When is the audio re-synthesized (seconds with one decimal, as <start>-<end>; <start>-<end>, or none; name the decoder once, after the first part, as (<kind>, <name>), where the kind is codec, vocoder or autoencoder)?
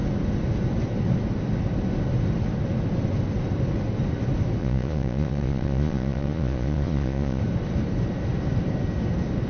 4.6-7.4 (vocoder, Vocos)